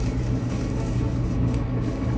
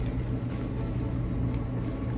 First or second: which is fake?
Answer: first